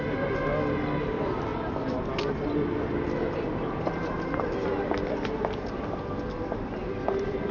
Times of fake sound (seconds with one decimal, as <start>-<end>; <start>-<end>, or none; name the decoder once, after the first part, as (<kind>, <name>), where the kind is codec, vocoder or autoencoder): none